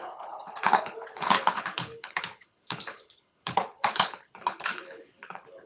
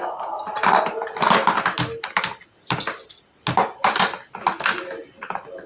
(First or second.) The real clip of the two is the second